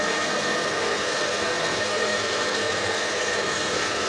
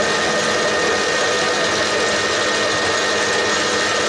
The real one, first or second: second